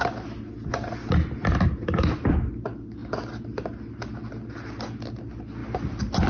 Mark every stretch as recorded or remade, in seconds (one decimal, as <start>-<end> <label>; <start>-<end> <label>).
0.0-6.3 recorded